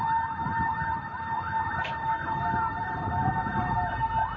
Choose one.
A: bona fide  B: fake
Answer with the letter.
B